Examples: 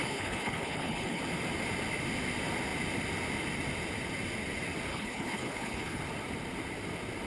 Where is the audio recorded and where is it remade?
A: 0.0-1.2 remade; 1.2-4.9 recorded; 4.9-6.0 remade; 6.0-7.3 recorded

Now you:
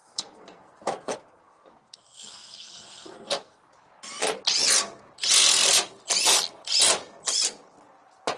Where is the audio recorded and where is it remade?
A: 0.0-3.6 remade; 3.6-8.4 recorded

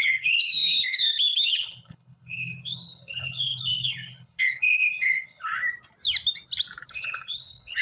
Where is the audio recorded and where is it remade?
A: 0.0-5.5 remade; 5.5-6.9 recorded; 6.9-7.8 remade

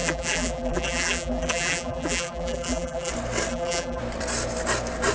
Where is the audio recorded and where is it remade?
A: 0.0-3.1 remade; 3.1-3.5 recorded; 3.5-4.0 remade; 4.0-5.1 recorded

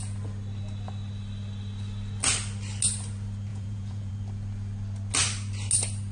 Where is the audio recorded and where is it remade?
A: 0.0-3.5 recorded; 3.5-4.1 remade; 4.1-6.1 recorded

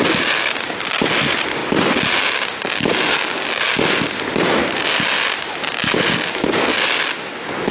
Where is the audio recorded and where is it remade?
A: 0.0-7.7 recorded

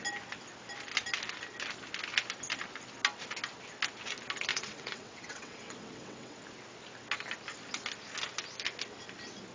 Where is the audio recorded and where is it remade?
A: 0.0-4.5 recorded; 4.5-6.4 remade; 6.4-9.5 recorded